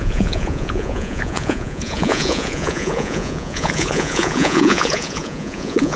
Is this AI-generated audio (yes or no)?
yes